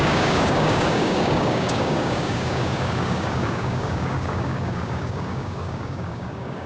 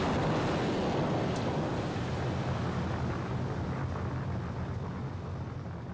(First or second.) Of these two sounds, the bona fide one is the second